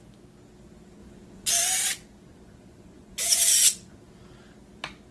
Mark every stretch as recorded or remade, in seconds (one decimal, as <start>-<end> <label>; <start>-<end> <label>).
0.0-1.0 recorded; 1.0-1.5 remade; 1.5-2.3 recorded; 2.3-4.1 remade; 4.1-5.1 recorded